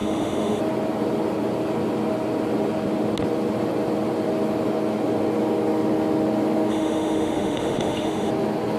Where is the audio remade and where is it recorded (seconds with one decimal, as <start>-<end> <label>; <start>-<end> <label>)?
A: 0.0-0.6 remade; 0.6-6.7 recorded; 6.7-8.3 remade; 8.3-8.8 recorded